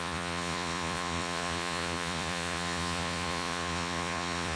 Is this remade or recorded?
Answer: remade